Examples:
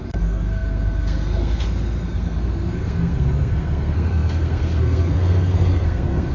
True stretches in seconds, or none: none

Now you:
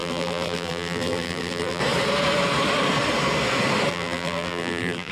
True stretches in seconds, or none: 1.8-3.9

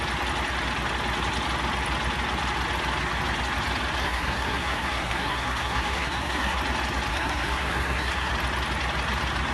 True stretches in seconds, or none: 0.0-4.0; 6.6-7.1; 8.3-9.5

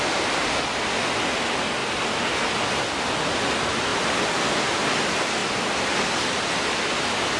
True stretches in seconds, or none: 0.0-7.4

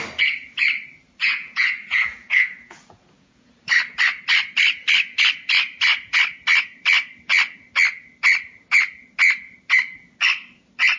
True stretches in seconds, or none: 0.0-1.2; 3.5-11.0

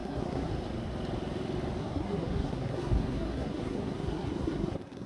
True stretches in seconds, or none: 0.5-1.8

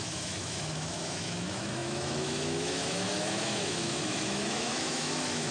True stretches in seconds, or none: none